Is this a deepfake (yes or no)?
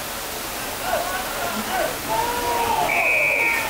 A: no